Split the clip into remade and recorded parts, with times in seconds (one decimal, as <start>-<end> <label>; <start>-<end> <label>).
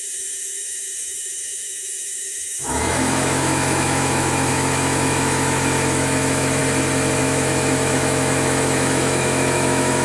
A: 0.0-6.6 remade; 6.6-7.2 recorded; 7.2-10.0 remade